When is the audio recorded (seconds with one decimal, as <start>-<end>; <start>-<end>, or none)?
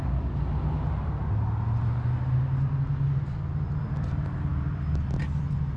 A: 0.0-5.8